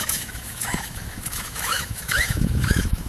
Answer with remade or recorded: remade